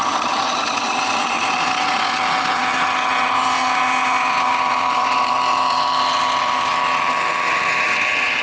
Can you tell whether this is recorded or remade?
remade